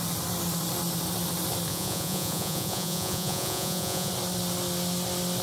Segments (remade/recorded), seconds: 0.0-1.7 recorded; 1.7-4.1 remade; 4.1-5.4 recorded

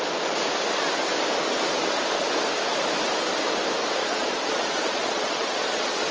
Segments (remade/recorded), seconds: 0.0-4.0 recorded; 4.0-6.1 remade

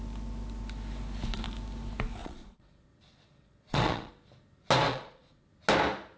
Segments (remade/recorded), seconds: 0.0-2.2 recorded; 2.2-4.1 remade; 4.1-4.9 recorded; 4.9-5.5 remade; 5.5-6.2 recorded

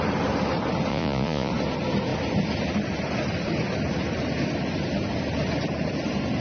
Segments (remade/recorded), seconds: 0.0-0.9 recorded; 0.9-1.5 remade; 1.5-6.4 recorded

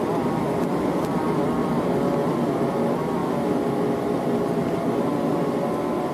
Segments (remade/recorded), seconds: 0.0-6.1 recorded

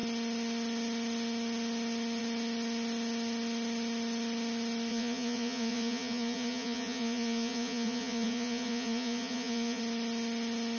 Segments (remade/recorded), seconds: 0.0-4.9 recorded; 4.9-9.8 remade; 9.8-10.8 recorded